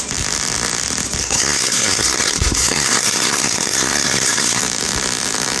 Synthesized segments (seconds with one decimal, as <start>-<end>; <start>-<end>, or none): 1.2-4.6